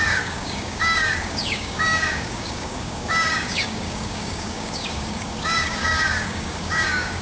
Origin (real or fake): fake